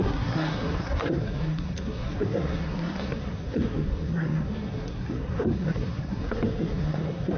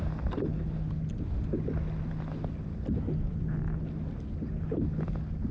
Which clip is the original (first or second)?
second